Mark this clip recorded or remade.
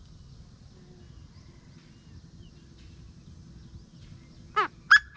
recorded